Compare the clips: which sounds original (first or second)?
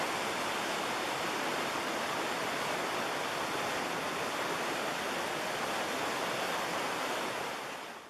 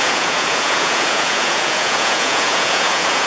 first